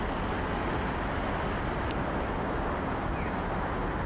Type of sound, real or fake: real